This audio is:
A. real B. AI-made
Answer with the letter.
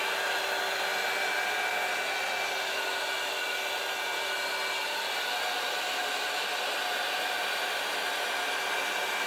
A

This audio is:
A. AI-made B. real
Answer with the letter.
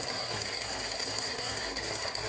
A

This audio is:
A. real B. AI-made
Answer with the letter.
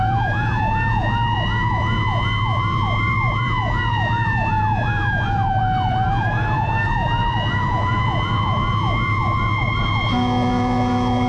B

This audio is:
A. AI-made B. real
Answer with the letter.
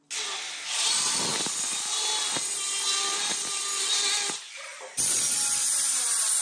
B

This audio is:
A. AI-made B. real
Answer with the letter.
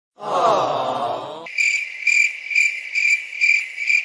B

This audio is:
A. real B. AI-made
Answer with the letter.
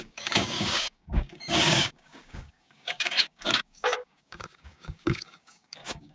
B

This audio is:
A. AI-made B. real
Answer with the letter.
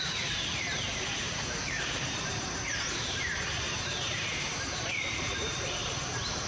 A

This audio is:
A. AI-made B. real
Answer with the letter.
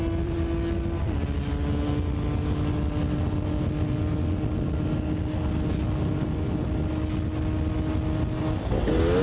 B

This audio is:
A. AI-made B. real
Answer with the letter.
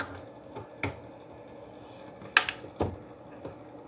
B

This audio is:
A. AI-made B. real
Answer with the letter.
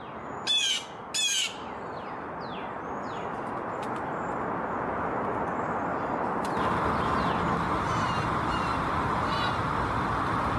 B